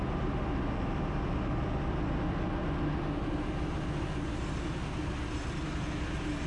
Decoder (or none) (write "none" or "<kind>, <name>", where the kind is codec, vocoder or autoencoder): none